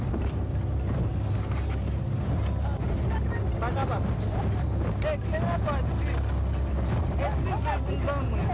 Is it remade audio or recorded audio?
recorded